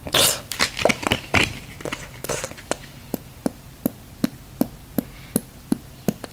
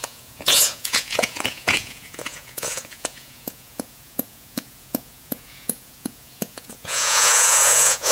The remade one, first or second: second